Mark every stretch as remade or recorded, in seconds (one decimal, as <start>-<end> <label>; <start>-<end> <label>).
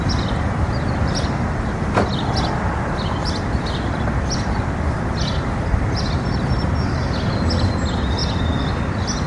0.0-9.3 recorded